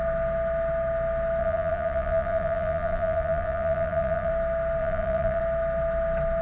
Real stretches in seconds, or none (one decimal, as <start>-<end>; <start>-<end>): 0.0-1.4; 4.3-4.8; 5.4-6.4